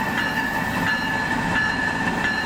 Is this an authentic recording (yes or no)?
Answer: yes